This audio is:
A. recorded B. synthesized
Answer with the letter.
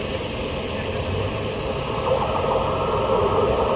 A